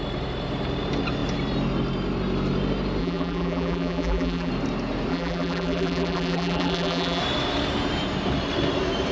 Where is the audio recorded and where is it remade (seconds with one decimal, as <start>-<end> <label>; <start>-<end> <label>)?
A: 0.0-3.0 recorded; 3.0-4.5 remade; 4.5-5.1 recorded; 5.1-7.2 remade; 7.2-9.1 recorded